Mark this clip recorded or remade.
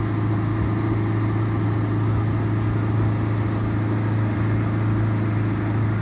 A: recorded